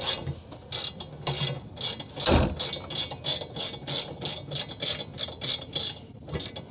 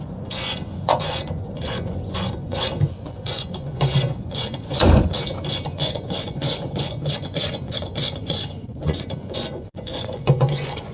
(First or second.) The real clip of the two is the first